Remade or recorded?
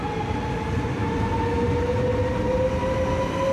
recorded